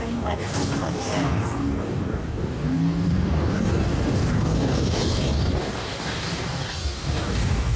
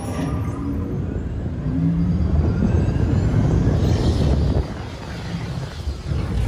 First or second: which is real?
second